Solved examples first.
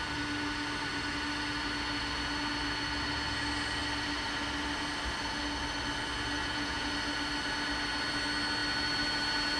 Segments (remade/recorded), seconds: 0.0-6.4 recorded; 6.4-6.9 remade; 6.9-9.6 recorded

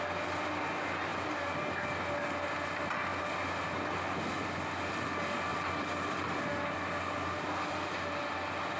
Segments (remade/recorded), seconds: 0.0-8.8 recorded

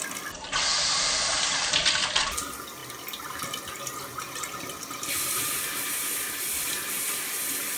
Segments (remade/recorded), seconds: 0.0-7.8 remade

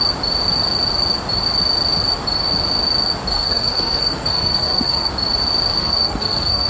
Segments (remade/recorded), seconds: 0.0-3.3 recorded; 3.3-5.1 remade; 5.1-5.8 recorded; 5.8-6.7 remade

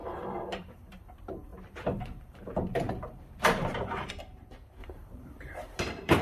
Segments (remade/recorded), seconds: 0.0-6.2 remade